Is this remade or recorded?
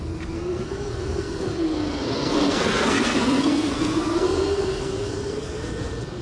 remade